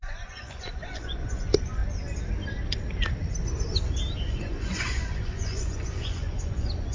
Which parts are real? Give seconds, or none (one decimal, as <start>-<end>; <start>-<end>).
1.8-4.2